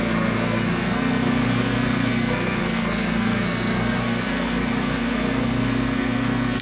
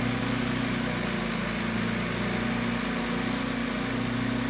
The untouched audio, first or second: second